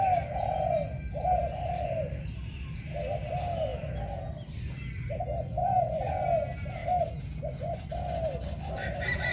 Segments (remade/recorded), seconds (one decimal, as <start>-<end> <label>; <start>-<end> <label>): 0.0-5.6 recorded; 5.6-6.2 remade; 6.2-9.3 recorded